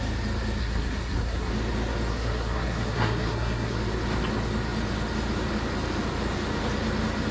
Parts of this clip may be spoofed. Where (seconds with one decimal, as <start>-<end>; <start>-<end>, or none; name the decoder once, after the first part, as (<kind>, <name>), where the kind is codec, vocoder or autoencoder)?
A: 0.6-1.5 (codec, SNAC); 2.1-3.8